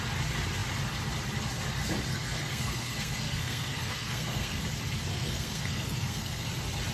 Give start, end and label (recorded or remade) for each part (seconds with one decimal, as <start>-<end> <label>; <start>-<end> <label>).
0.0-2.1 recorded; 2.1-4.6 remade; 4.6-5.1 recorded; 5.1-6.5 remade; 6.5-6.9 recorded